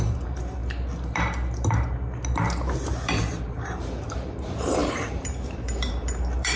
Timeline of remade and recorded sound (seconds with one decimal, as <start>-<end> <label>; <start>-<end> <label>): 0.0-0.6 remade; 0.6-3.0 recorded; 3.0-6.6 remade

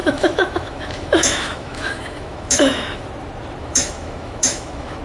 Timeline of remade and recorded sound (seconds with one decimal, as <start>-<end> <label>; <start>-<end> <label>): 0.0-3.0 remade; 3.0-3.6 recorded; 3.6-5.0 remade

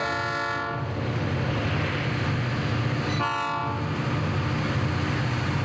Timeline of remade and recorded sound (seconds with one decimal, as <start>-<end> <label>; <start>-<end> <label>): 0.0-5.6 recorded

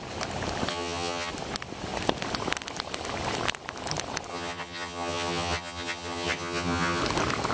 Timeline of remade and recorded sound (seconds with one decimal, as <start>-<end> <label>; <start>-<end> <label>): 0.0-0.7 recorded; 0.7-1.3 remade; 1.3-4.3 recorded; 4.3-7.0 remade; 7.0-7.5 recorded

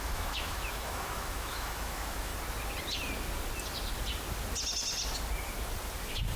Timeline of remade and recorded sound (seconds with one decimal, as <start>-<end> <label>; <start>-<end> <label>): 0.0-2.3 remade; 2.3-6.4 recorded

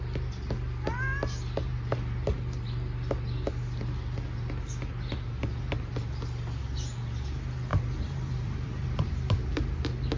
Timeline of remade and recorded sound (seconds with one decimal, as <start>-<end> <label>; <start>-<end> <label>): 0.0-7.7 recorded; 7.7-9.1 remade; 9.1-10.2 recorded